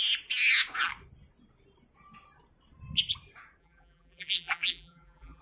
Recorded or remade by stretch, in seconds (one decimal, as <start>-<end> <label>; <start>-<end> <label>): 0.0-3.6 recorded; 3.6-5.4 remade